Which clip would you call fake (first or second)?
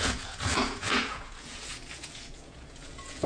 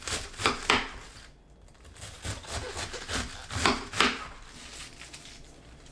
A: first